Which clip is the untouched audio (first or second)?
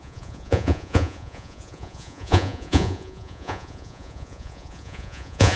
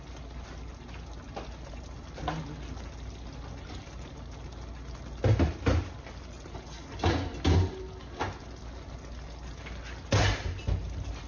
second